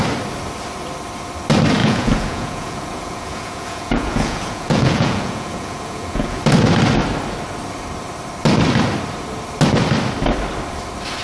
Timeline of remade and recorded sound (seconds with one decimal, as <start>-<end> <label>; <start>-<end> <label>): 0.0-1.8 recorded; 1.8-6.4 remade; 6.4-11.2 recorded